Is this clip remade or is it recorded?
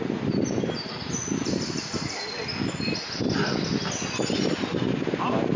recorded